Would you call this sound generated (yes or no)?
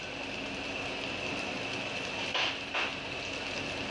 no